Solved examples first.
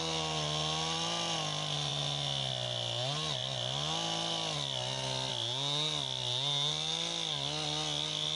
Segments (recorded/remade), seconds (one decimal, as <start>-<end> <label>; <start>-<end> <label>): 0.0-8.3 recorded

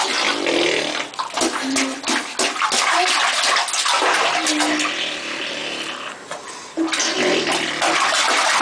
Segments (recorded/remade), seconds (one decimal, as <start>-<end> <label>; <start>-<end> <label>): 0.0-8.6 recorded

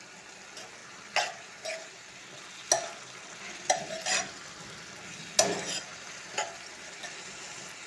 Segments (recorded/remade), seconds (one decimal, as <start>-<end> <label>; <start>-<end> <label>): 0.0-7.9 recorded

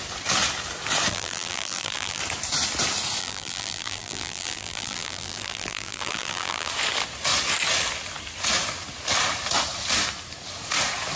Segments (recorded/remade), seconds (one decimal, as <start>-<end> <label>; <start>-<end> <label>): 0.0-1.1 recorded; 1.1-2.2 remade; 2.2-3.2 recorded; 3.2-6.7 remade; 6.7-11.2 recorded